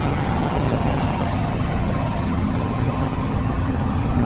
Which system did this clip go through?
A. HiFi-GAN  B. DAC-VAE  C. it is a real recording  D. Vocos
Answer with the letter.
A